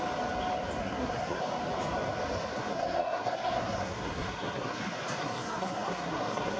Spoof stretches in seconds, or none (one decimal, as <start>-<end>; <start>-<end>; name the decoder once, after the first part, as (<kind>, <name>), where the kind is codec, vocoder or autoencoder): 0.8-1.4 (codec, SNAC); 2.6-4.8; 5.2-6.6

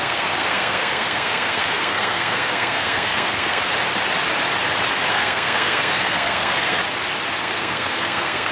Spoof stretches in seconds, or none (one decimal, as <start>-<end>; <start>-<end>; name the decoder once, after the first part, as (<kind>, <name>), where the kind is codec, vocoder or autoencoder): 0.0-3.7 (codec, SNAC); 5.1-6.8; 7.4-8.5

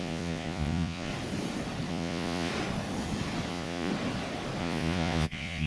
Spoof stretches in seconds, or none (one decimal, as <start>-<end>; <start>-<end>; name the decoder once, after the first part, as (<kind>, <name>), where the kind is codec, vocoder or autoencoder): 0.0-1.1 (vocoder, Vocos); 1.9-2.5; 3.5-3.9; 4.6-5.7

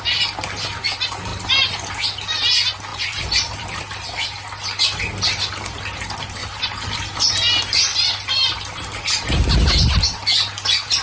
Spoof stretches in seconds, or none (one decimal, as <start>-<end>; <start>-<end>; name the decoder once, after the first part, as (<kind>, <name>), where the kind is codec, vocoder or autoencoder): 2.9-3.8 (vocoder, BigVGAN v2); 6.4-7.3; 7.9-9.0